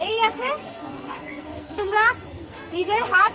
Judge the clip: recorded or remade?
remade